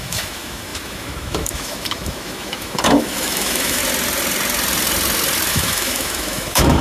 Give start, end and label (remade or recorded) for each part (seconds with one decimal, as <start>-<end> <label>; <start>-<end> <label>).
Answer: 0.0-3.8 remade; 3.8-5.5 recorded; 5.5-6.8 remade